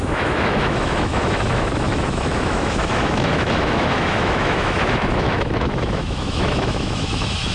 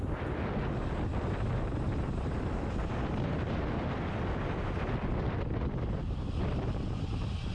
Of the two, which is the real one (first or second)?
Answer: second